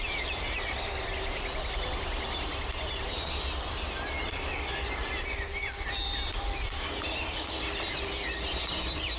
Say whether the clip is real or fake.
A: fake